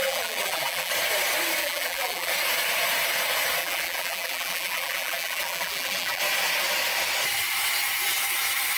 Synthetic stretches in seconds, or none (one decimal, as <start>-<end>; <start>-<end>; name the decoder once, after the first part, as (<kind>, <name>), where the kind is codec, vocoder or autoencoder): 0.0-0.9 (vocoder, BigVGAN v2); 1.6-2.3; 3.6-6.2